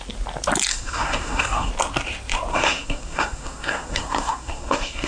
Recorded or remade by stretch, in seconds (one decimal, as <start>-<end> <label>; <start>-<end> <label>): 0.0-0.7 recorded; 0.7-1.7 remade; 1.7-2.5 recorded; 2.5-5.1 remade